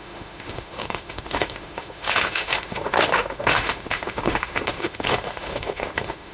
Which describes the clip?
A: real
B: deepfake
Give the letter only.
B